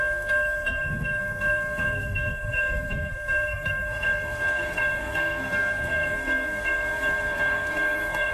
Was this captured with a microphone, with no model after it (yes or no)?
no